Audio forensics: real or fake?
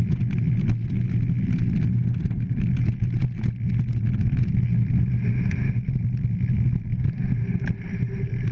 real